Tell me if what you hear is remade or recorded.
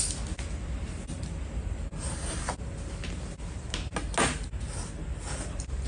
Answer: recorded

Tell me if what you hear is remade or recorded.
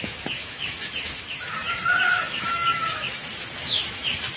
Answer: remade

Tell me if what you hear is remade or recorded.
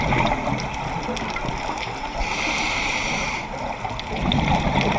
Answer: recorded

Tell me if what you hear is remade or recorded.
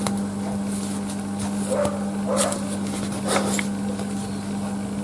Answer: recorded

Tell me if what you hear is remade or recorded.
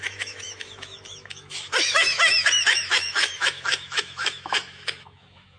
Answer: remade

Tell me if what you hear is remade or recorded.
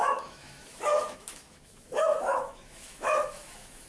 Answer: remade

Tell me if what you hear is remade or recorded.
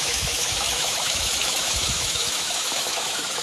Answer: remade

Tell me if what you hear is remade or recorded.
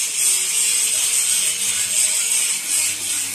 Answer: recorded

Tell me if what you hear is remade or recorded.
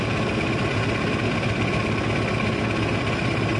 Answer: recorded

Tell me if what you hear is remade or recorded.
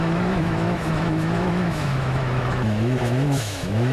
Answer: remade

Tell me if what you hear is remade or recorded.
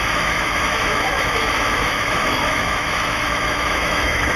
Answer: remade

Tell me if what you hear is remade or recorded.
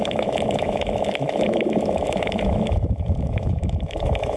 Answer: remade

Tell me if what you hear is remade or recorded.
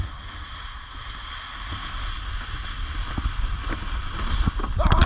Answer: recorded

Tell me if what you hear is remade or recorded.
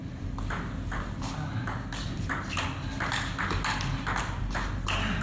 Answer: recorded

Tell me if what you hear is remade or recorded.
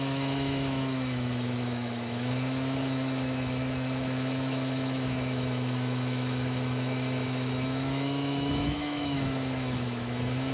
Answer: remade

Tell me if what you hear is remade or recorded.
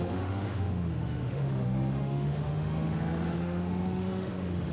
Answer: remade